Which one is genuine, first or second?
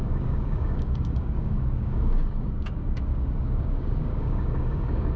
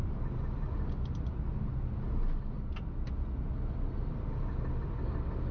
second